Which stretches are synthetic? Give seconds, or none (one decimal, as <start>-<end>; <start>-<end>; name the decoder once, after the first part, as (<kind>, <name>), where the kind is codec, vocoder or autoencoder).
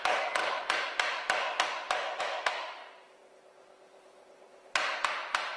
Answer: 0.0-0.4 (autoencoder, DAC-VAE); 2.2-2.8